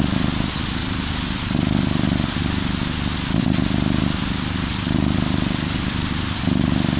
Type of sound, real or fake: real